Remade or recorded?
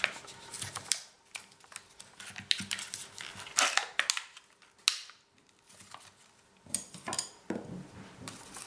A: recorded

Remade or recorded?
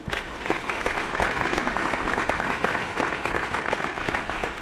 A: remade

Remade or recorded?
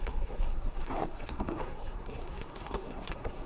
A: remade